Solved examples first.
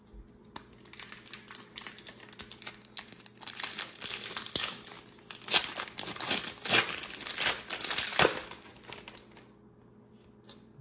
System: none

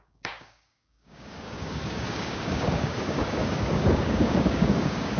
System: codec, DAC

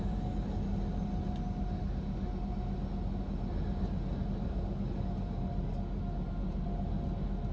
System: none